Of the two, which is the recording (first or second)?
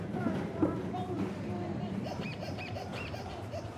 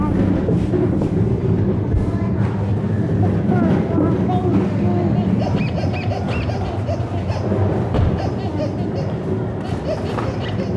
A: second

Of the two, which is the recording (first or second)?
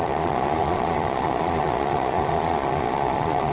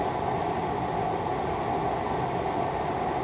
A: second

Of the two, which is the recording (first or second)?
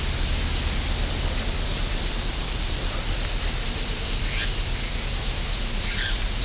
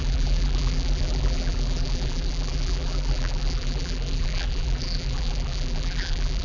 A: first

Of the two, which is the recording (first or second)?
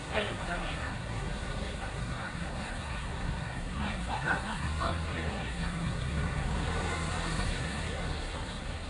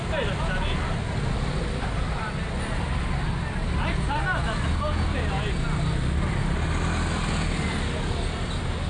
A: second